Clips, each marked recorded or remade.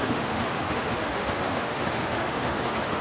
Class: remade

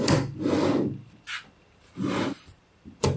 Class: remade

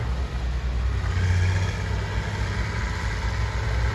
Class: recorded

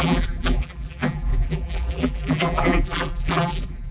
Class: remade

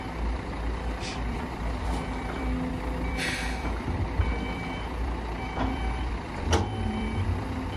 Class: remade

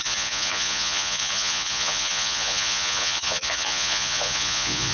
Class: remade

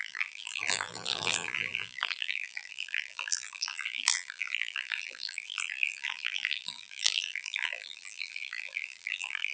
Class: remade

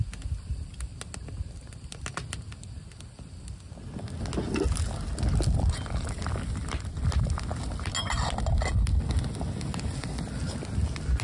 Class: recorded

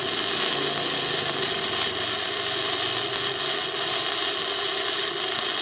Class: recorded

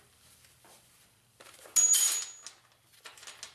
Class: recorded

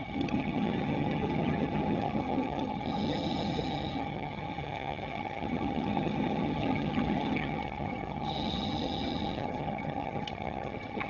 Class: remade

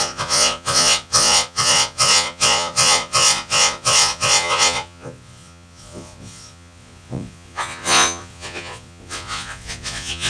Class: remade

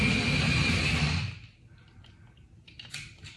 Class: recorded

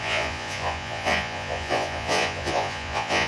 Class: remade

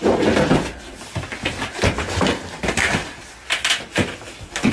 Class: recorded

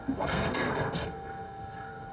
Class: remade